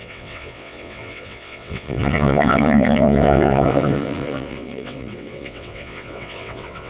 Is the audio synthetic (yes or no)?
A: yes